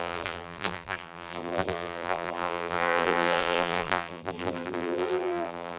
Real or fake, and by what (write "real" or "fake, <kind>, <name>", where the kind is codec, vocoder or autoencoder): fake, vocoder, BigVGAN v2